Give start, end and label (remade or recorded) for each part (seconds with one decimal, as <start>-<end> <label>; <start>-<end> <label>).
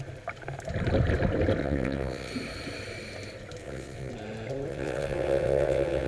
0.0-1.6 recorded; 1.6-2.3 remade; 2.3-3.6 recorded; 3.6-4.1 remade; 4.1-4.7 recorded; 4.7-6.1 remade